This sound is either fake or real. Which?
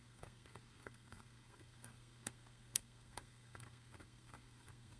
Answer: fake